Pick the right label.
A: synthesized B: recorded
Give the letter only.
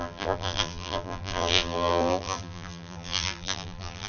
A